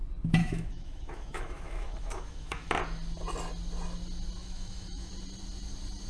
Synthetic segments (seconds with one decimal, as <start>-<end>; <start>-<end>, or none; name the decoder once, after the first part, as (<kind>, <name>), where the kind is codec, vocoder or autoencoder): 0.4-2.7 (autoencoder, DAC-VAE); 4.4-5.1